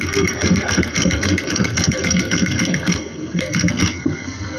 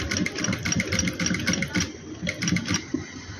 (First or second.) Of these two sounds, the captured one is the second